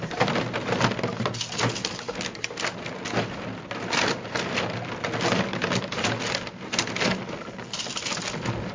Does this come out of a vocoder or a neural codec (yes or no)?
no